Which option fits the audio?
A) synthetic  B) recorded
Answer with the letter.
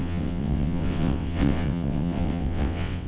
A